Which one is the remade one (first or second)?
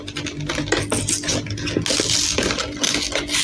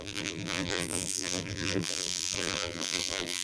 second